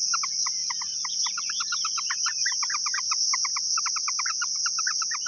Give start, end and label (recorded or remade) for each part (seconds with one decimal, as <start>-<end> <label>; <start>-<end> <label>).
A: 0.0-5.3 recorded